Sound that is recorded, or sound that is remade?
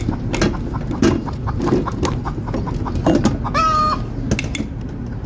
recorded